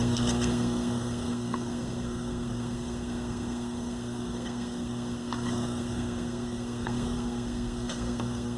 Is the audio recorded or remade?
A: remade